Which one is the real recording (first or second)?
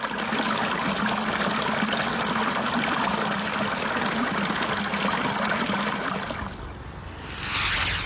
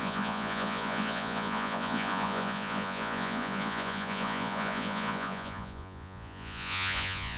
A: first